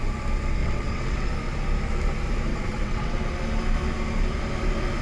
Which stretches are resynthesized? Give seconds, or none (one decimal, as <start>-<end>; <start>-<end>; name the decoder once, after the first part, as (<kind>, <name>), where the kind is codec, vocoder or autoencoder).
0.6-1.3 (vocoder, WaveNeXt); 2.5-3.2